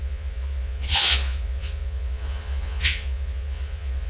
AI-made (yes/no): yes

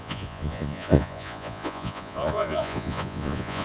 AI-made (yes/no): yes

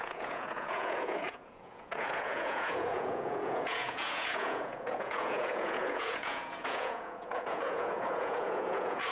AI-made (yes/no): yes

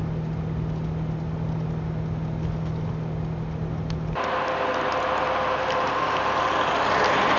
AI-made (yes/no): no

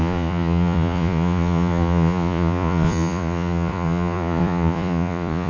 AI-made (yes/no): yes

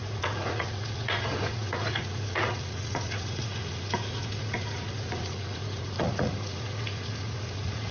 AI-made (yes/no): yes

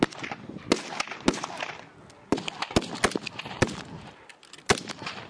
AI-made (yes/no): no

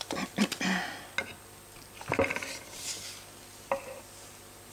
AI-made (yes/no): no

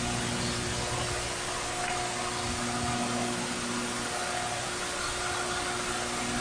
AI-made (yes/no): no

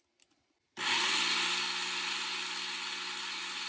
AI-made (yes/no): no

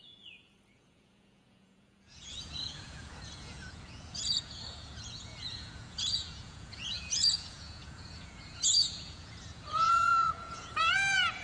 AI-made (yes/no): yes